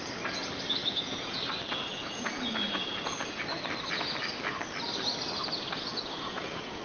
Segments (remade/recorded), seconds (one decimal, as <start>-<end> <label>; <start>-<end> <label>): 0.0-0.8 recorded; 0.8-1.4 remade; 1.4-1.9 recorded; 1.9-3.4 remade; 3.4-5.9 recorded; 5.9-6.8 remade